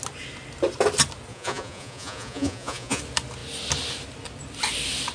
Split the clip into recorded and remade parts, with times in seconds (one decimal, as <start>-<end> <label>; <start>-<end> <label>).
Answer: 0.0-1.3 recorded; 1.3-3.0 remade; 3.0-5.1 recorded